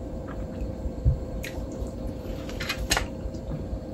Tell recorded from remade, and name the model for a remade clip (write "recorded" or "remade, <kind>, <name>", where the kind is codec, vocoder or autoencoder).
remade, vocoder, BigVGAN v2